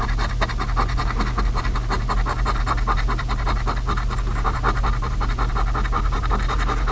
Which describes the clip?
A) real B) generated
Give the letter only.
A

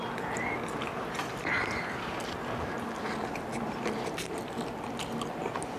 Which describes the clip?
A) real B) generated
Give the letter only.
A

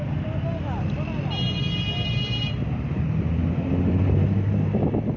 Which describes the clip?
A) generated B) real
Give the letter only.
B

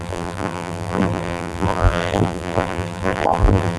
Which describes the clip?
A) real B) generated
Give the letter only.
B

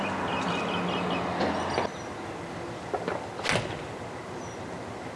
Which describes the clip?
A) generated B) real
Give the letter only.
B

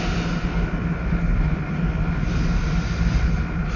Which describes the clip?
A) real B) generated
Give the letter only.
A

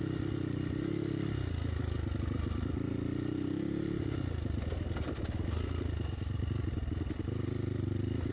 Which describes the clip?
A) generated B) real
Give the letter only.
B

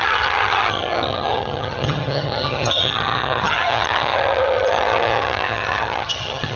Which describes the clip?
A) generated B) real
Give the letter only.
A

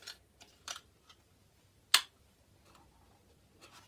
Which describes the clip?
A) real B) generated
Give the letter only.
A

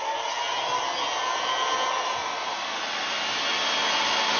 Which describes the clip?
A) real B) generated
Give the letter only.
A